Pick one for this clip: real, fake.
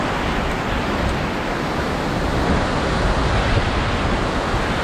real